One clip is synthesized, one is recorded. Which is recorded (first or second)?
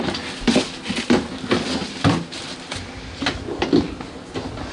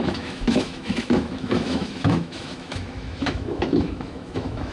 first